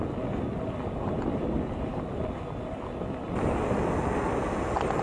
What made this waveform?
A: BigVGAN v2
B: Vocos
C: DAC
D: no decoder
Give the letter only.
D